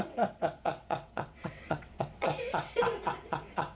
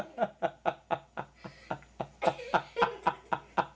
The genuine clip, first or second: second